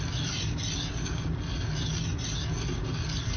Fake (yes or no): no